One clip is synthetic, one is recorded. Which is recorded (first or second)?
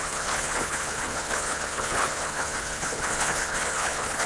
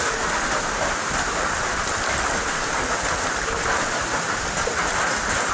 second